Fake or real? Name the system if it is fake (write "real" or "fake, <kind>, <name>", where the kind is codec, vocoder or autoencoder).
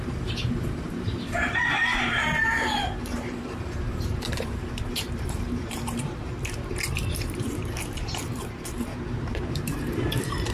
fake, vocoder, BigVGAN v2